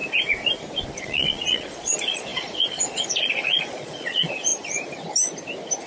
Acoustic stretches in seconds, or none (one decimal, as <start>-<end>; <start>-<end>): 0.0-1.0; 4.5-5.9